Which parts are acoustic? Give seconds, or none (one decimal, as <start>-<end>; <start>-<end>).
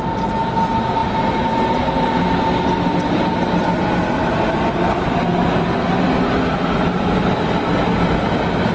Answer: 0.0-8.7